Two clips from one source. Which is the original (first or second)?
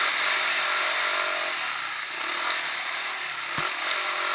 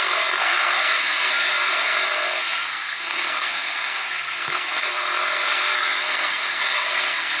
first